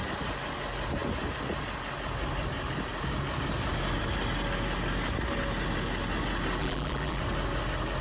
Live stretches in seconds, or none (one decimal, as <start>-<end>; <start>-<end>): 0.0-6.6; 7.2-8.0